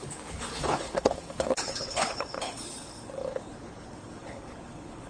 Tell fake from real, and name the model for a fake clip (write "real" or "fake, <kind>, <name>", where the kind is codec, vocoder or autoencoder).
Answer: fake, codec, HILCodec